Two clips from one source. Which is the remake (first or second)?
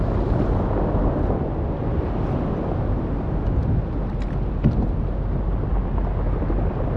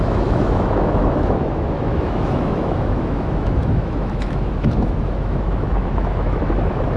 second